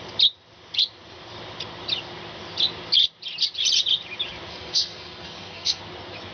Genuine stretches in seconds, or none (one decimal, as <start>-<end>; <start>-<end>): 0.0-4.5; 5.8-6.3